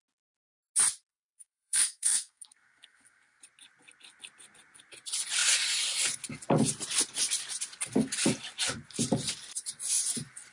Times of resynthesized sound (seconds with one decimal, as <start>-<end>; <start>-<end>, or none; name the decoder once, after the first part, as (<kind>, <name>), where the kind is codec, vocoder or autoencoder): 1.1-3.4 (codec, SNAC)